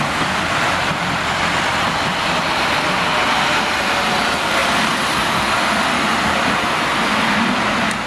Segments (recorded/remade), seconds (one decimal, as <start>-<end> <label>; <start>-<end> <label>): 0.0-8.1 recorded